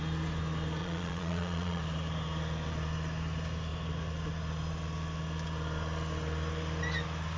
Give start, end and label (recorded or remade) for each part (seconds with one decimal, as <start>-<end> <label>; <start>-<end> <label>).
0.0-0.8 recorded; 0.8-1.8 remade; 1.8-7.4 recorded